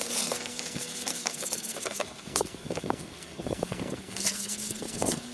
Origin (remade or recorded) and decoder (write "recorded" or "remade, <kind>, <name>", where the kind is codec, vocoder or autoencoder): remade, codec, SNAC